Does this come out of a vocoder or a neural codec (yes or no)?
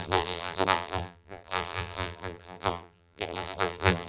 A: yes